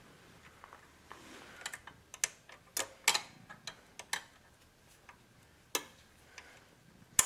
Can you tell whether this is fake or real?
real